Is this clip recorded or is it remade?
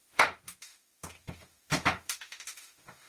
remade